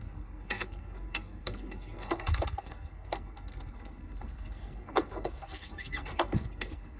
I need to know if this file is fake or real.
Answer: fake